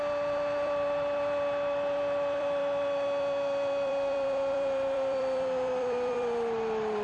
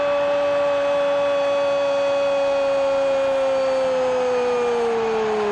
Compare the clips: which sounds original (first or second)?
second